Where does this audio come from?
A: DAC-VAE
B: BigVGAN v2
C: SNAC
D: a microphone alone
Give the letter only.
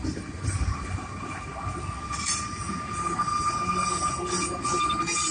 D